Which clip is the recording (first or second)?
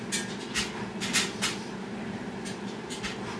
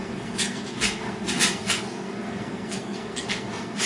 first